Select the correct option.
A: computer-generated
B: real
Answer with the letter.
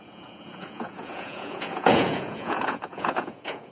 A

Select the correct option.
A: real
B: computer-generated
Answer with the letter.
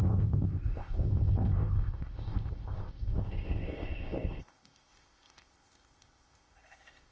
B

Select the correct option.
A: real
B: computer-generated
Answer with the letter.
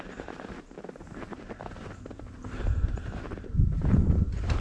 B